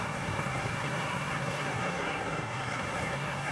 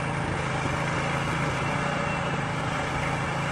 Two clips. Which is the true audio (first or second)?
second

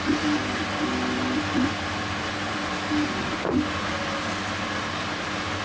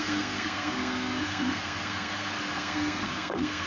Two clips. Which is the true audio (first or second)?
first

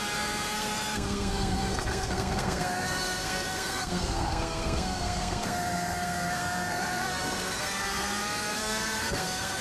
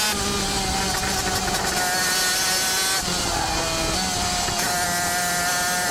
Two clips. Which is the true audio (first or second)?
second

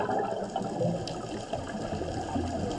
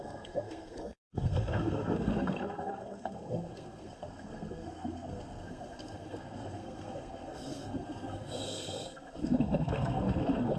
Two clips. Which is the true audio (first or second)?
first